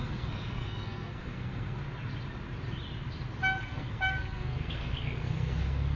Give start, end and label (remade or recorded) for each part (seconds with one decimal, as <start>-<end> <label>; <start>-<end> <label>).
0.0-1.8 remade; 1.8-3.6 recorded; 3.6-6.0 remade